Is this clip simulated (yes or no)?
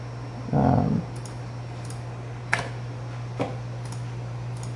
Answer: no